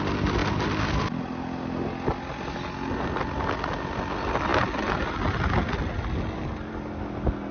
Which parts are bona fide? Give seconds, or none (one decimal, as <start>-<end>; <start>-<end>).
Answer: 0.0-7.5